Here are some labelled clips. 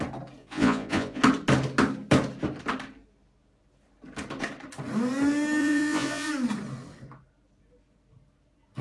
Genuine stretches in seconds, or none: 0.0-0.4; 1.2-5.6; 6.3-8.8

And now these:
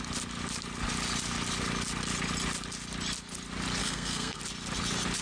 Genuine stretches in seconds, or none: 0.0-3.8; 4.4-5.2

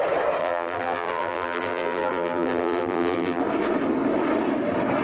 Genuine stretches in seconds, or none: 0.0-0.4; 3.4-5.0

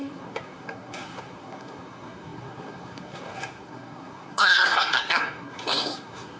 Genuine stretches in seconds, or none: none

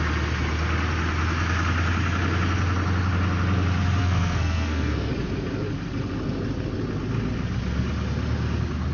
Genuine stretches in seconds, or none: 0.0-4.0; 5.1-8.9

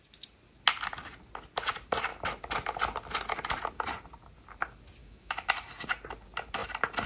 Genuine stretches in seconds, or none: 0.0-5.0; 5.5-7.1